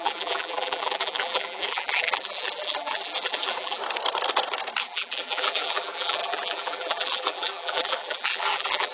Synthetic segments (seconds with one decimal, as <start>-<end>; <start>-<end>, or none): 0.0-3.8; 4.8-8.9